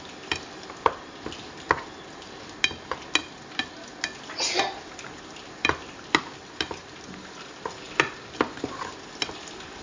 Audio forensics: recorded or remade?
recorded